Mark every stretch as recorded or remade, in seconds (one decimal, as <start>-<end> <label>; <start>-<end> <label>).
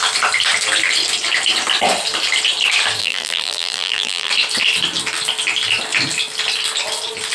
0.0-3.0 recorded; 3.0-4.3 remade; 4.3-7.3 recorded